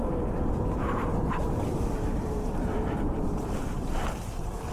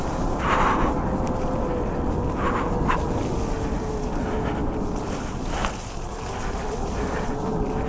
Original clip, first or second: second